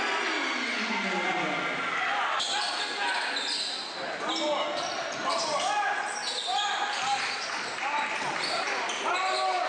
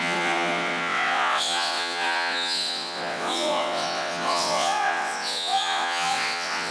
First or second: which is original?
first